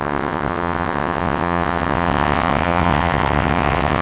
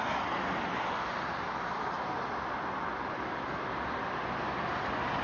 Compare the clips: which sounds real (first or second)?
second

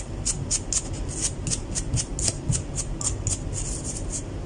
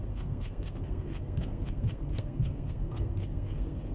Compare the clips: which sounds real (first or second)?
first